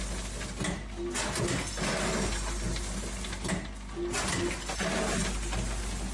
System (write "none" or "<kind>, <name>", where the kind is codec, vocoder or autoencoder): none